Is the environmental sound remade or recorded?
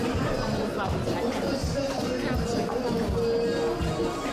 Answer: recorded